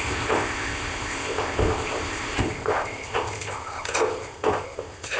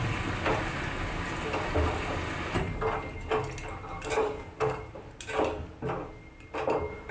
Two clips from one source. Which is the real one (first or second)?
second